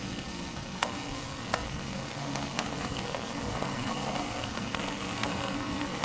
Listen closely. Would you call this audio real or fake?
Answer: fake